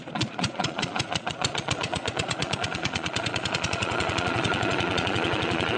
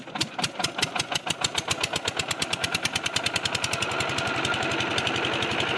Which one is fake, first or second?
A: first